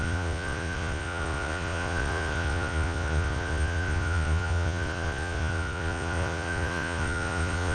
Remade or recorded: remade